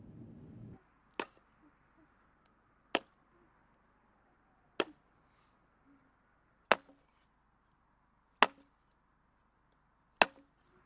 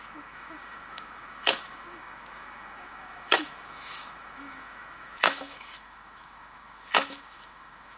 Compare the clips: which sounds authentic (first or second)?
first